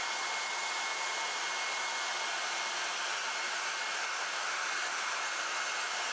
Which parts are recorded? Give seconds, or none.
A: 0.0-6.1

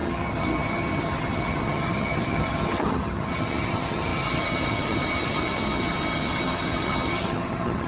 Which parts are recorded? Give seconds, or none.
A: none

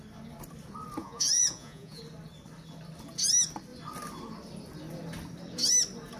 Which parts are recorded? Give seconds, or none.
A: 0.0-1.0; 2.0-6.2

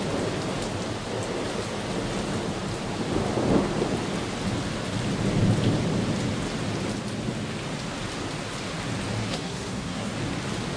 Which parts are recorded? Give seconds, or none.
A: 0.0-9.2; 10.1-10.8

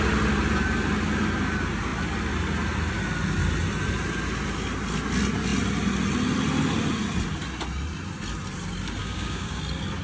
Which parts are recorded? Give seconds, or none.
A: 0.0-9.0; 9.6-10.0

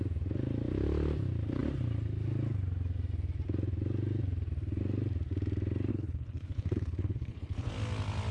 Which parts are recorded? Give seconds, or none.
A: 0.0-5.9; 7.7-8.3

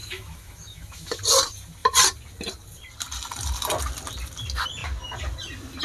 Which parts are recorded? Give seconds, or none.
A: 1.2-5.8

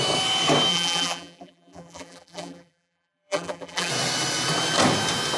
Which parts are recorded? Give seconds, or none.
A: 0.0-0.7; 3.9-5.4